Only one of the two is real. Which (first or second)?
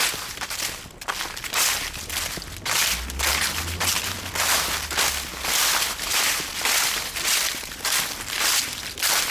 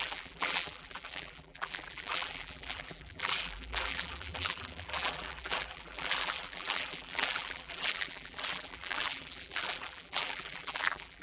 first